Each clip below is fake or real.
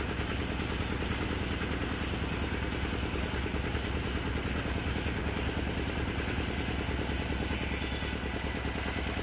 real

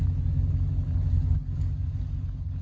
real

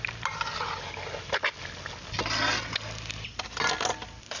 real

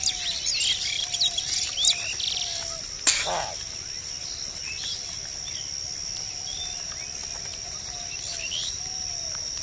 real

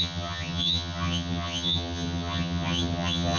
fake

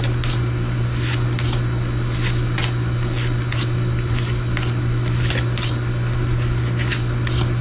real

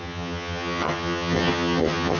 fake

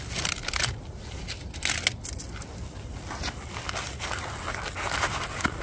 real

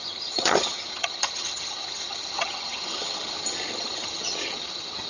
fake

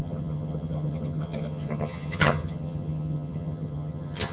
fake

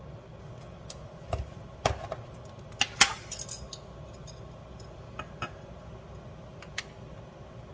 real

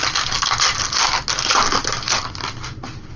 real